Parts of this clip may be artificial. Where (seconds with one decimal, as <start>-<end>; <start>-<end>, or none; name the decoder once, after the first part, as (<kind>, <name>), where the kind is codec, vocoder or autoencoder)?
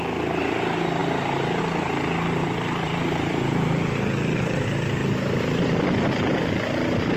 2.4-3.7 (vocoder, BigVGAN v2)